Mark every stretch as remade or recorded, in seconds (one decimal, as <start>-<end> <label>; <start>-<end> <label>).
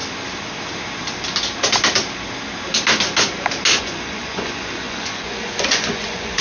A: 0.0-3.8 recorded; 3.8-6.4 remade